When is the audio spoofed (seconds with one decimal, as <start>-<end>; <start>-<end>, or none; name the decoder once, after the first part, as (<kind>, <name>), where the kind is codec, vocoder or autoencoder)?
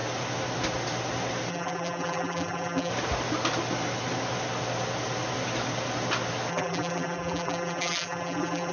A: 1.5-2.9 (vocoder, BigVGAN v2); 6.5-8.7